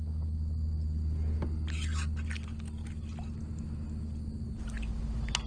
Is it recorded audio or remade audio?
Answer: recorded